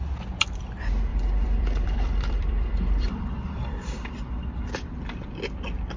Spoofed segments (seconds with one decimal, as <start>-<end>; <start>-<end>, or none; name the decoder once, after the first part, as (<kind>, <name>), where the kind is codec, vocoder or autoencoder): 1.1-4.7 (vocoder, BigVGAN v2)